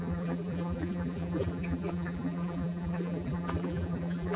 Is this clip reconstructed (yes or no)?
yes